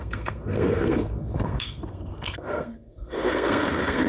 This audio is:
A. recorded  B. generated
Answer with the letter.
B